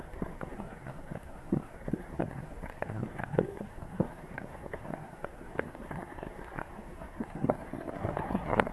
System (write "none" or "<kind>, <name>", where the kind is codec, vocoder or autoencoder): codec, SNAC